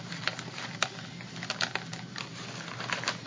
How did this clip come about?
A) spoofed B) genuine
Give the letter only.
B